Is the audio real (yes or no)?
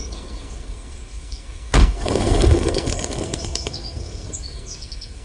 no